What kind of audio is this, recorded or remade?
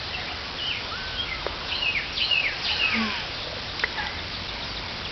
recorded